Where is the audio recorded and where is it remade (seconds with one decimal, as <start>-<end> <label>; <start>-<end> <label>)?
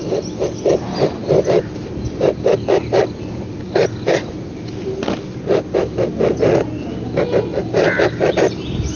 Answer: 0.0-8.9 recorded